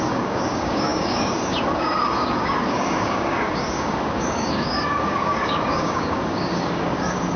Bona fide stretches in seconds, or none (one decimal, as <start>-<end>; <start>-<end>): none